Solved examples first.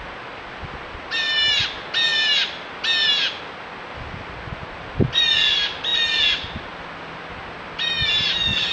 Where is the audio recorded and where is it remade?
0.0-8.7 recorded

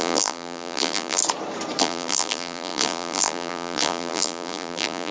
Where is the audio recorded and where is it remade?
0.0-1.2 remade; 1.2-1.8 recorded; 1.8-5.1 remade

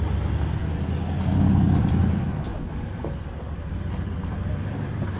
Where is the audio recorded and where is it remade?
0.0-0.6 remade; 0.6-1.8 recorded; 1.8-5.2 remade

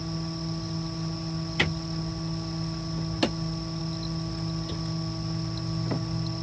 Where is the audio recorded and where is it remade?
0.0-6.4 recorded

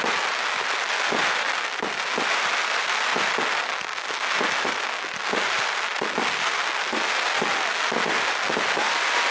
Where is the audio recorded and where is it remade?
0.0-9.3 recorded

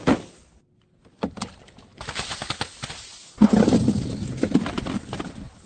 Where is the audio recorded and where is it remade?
0.0-1.9 recorded; 1.9-2.7 remade; 2.7-5.7 recorded

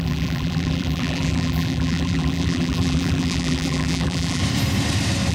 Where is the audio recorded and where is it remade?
0.0-4.4 remade; 4.4-5.3 recorded